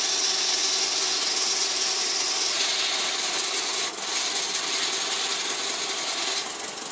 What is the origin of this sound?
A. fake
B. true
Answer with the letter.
B